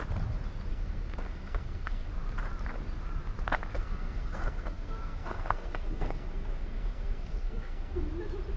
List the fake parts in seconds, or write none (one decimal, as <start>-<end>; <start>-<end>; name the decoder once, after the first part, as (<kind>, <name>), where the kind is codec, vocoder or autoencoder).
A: 0.7-2.1 (codec, SNAC); 3.7-8.1